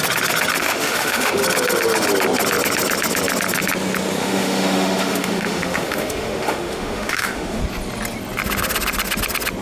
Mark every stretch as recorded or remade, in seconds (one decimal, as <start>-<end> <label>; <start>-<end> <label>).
0.0-0.6 recorded; 0.6-1.4 remade; 1.4-4.2 recorded; 4.2-7.6 remade; 7.6-9.6 recorded